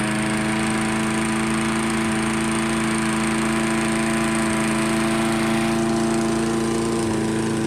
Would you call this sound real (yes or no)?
yes